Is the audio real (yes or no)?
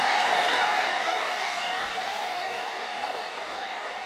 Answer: no